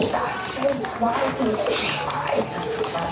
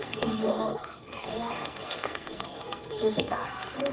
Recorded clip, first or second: first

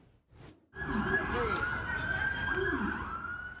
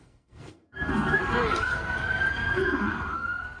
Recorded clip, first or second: first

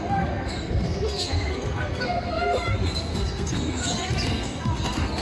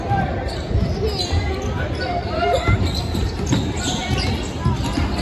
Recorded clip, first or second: second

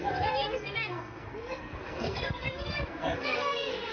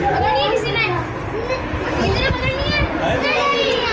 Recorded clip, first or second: second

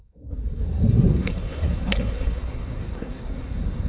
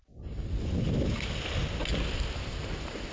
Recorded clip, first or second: second